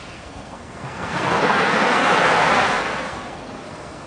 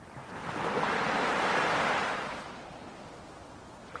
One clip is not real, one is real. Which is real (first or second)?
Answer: second